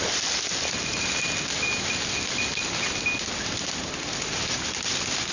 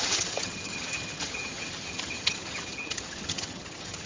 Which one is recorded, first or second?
first